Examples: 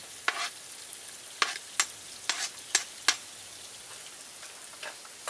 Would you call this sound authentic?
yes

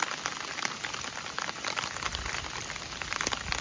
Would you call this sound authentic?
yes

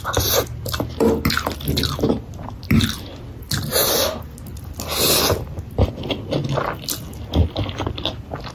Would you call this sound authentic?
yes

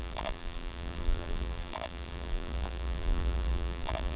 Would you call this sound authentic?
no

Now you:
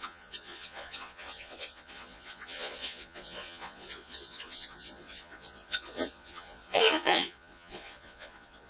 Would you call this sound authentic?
no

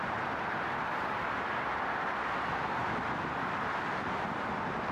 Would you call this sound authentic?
yes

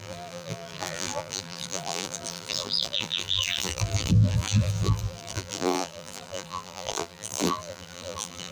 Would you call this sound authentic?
no